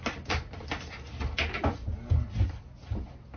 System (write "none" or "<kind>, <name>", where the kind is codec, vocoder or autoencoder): none